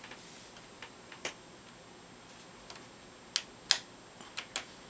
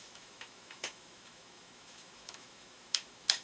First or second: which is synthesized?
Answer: second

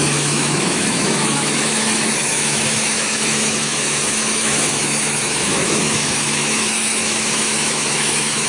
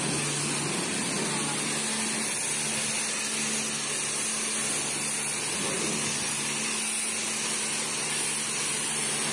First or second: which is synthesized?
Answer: first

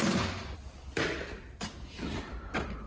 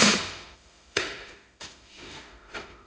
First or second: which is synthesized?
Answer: second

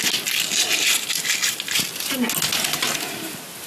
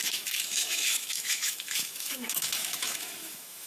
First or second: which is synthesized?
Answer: second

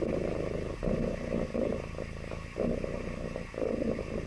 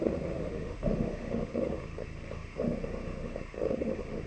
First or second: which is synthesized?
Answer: second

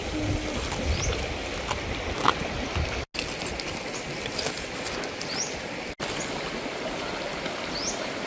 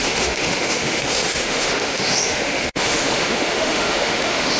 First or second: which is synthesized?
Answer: second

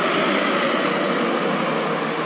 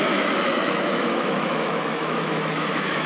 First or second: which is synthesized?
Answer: second